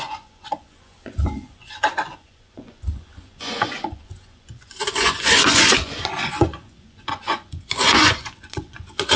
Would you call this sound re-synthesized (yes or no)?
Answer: yes